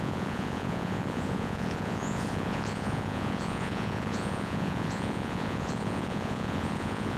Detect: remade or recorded remade